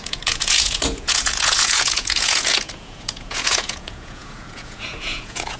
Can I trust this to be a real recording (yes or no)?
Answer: no